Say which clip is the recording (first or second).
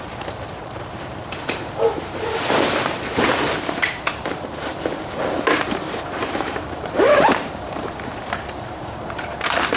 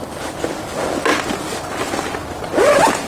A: second